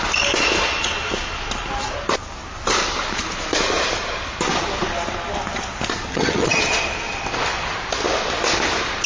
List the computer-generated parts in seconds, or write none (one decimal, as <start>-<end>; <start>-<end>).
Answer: 6.1-6.6